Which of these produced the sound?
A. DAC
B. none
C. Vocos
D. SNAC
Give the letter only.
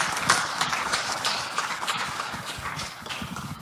A